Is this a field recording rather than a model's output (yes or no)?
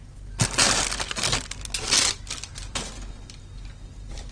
yes